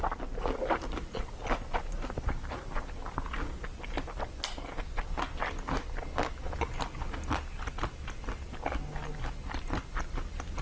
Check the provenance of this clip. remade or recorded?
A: recorded